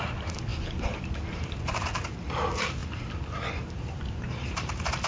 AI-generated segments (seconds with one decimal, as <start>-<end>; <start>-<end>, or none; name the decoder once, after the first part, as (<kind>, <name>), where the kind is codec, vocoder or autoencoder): 0.0-5.1 (vocoder, BigVGAN v2)